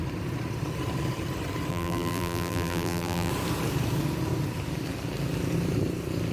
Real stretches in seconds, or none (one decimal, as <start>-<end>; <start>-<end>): 0.0-1.7; 3.3-6.3